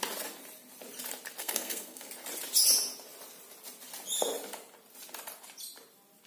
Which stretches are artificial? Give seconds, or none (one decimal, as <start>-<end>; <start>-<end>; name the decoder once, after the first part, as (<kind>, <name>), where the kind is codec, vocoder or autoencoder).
1.4-2.1 (codec, SNAC)